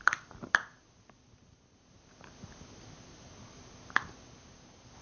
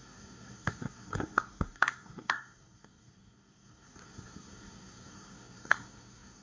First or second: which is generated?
second